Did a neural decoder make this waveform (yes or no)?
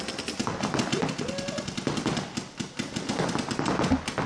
no